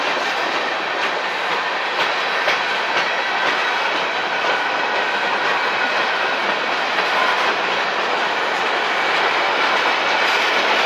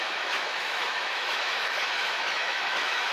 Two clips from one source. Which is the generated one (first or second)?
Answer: second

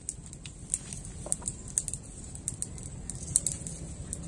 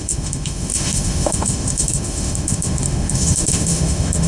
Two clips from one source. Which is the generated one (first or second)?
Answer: second